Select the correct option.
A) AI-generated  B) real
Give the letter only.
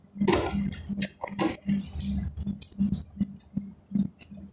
B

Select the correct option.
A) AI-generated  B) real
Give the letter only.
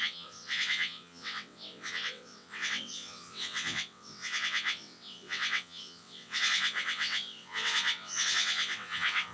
A